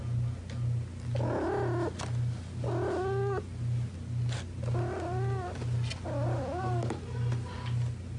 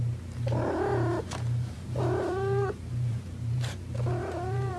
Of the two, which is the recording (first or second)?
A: first